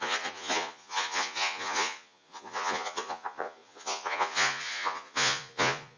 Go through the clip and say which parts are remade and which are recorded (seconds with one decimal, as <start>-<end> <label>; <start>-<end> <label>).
0.0-6.0 remade

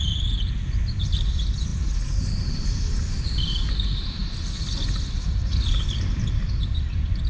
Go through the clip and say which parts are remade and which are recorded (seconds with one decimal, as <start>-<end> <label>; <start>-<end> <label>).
0.0-7.3 recorded